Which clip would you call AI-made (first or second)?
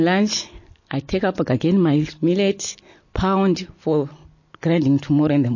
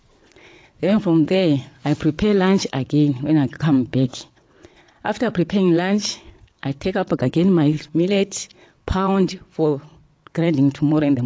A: second